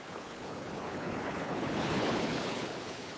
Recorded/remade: remade